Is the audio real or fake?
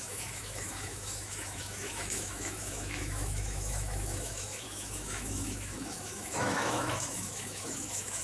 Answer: fake